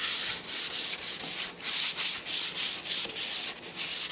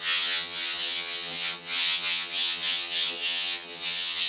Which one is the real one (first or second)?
first